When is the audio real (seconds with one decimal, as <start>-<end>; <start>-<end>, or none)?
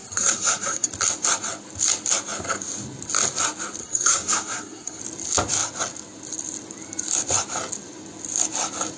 0.9-3.8; 5.0-9.0